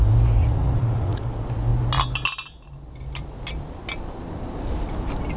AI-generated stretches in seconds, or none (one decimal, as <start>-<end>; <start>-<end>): 0.4-1.2